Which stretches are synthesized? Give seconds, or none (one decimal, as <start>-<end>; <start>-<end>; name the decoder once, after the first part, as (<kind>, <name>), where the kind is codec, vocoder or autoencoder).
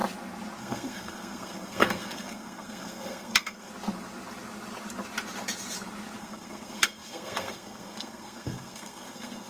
0.6-3.7 (codec, SNAC); 6.2-9.5